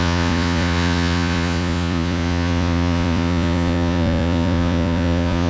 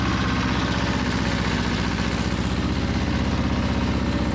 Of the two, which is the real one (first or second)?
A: second